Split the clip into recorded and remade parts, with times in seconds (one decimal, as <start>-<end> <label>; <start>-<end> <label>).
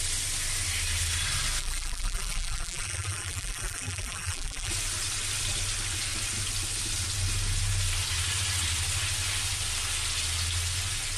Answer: 0.0-1.6 recorded; 1.6-4.7 remade; 4.7-11.2 recorded